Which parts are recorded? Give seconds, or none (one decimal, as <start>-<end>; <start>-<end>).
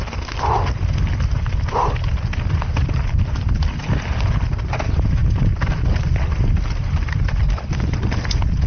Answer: 0.0-8.7